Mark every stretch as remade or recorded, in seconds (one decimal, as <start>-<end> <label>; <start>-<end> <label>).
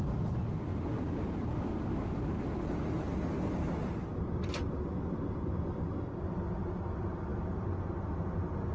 0.0-8.7 recorded